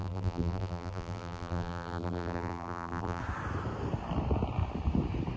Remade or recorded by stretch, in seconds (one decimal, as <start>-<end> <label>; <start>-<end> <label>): 0.0-3.2 remade; 3.2-5.4 recorded